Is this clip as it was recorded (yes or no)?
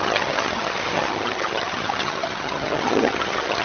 no